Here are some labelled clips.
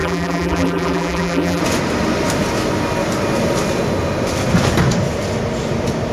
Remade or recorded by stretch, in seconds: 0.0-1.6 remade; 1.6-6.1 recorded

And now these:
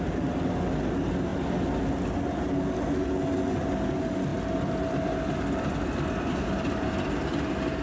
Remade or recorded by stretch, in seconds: 0.0-7.8 recorded

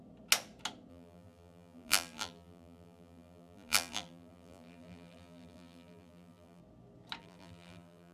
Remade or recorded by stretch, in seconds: 0.0-0.9 recorded; 0.9-6.6 remade; 6.6-7.2 recorded; 7.2-8.1 remade

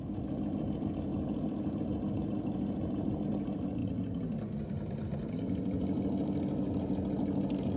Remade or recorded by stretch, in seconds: 0.0-1.1 recorded; 1.1-3.2 remade; 3.2-7.8 recorded

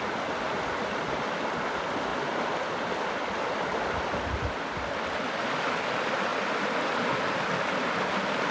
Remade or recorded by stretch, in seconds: 0.0-8.5 recorded